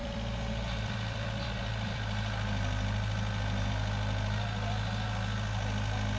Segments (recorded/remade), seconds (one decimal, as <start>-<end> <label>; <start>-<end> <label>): 0.0-3.7 remade; 3.7-6.2 recorded